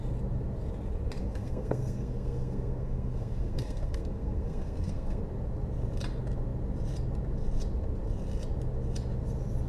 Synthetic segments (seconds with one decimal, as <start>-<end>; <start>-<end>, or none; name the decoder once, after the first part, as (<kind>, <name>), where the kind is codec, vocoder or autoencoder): 1.2-5.2 (codec, SNAC)